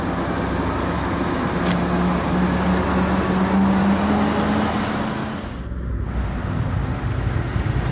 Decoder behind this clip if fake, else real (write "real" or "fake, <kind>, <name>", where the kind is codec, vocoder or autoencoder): real